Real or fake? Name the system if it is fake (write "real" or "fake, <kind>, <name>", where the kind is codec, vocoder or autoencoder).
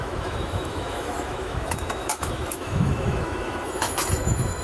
fake, autoencoder, DAC-VAE